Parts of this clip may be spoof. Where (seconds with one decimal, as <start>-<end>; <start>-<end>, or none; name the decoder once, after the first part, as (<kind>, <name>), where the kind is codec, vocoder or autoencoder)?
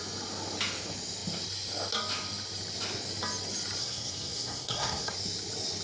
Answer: 3.8-5.1 (codec, SNAC)